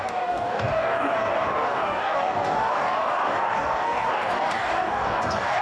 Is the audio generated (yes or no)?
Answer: yes